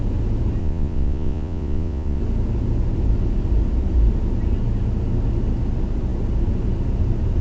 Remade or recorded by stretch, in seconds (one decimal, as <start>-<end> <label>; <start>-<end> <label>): 0.0-0.6 recorded; 0.6-2.2 remade; 2.2-7.4 recorded